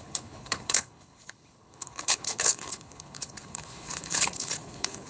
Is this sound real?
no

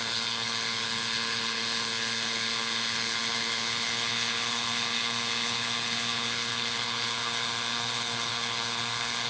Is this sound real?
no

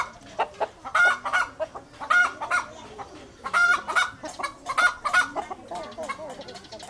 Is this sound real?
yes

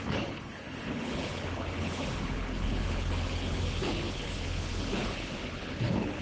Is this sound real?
no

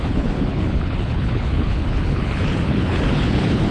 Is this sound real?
no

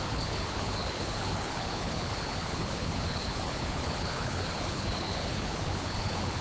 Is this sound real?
no